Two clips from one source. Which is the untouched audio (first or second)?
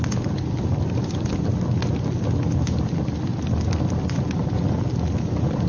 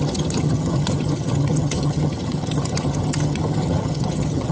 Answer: first